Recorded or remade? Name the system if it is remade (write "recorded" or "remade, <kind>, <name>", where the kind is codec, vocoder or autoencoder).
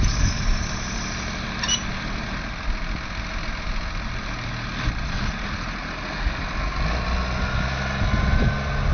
recorded